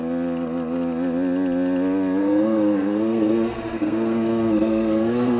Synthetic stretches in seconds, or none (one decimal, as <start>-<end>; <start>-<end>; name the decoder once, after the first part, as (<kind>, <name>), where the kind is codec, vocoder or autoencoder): 2.2-5.4 (codec, SNAC)